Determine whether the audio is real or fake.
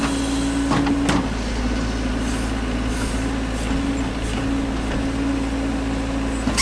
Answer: real